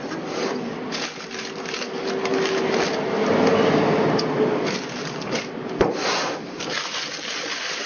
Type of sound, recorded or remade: remade